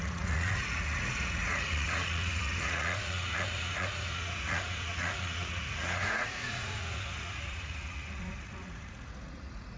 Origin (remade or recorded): remade